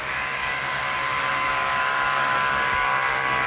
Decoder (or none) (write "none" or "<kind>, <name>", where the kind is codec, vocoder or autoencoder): codec, DAC